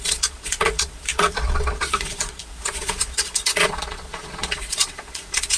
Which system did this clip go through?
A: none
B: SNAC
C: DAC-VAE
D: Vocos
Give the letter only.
D